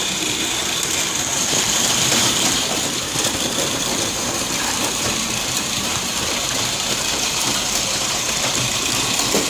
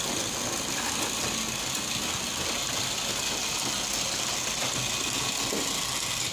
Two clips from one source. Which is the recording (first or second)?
second